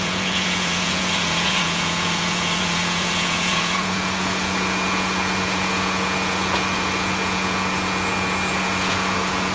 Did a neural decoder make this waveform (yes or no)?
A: yes